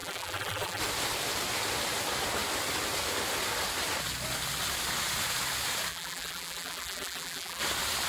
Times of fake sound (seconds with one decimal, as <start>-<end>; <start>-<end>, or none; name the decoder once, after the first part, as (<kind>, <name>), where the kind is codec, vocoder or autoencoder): 0.0-0.8 (vocoder, BigVGAN v2); 5.9-7.6